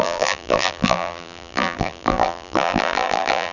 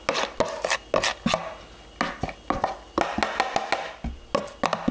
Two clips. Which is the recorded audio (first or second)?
second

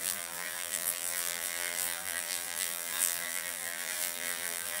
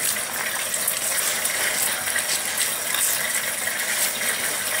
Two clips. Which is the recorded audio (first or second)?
second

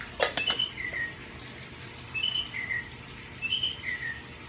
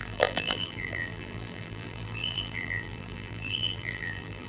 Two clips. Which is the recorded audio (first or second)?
first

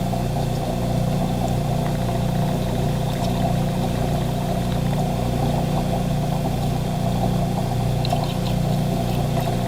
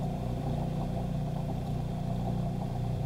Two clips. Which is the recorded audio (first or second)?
first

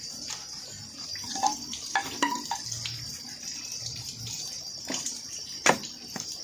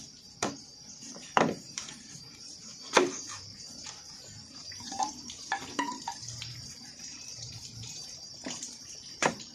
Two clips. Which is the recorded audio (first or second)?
first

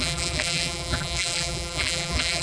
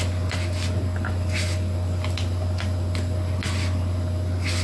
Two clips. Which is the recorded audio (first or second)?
second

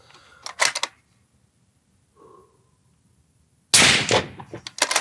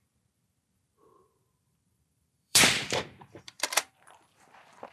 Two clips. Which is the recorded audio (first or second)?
first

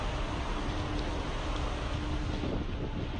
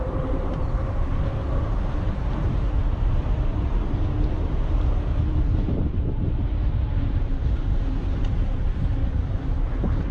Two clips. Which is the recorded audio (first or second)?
first